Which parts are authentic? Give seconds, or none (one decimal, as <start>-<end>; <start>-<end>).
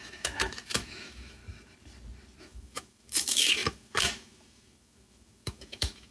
1.4-2.4